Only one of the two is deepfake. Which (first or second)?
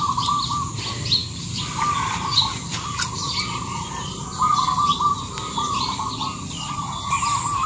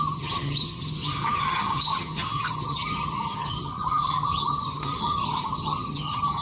second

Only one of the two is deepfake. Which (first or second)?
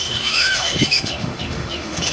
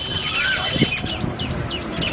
first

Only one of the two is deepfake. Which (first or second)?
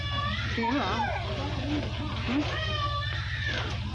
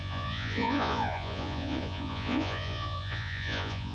second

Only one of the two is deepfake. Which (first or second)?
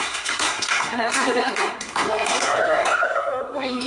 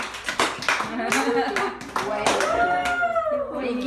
first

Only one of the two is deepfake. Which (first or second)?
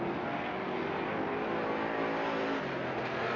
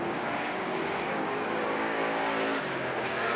second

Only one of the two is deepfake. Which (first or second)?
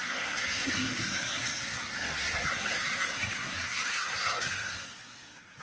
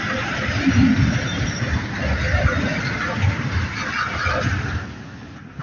first